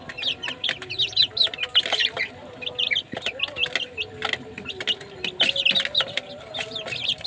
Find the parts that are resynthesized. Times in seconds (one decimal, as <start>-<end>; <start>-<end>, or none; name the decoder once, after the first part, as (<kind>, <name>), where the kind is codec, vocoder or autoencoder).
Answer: none